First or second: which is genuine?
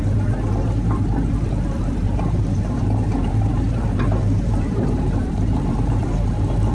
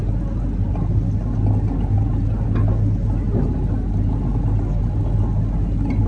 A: second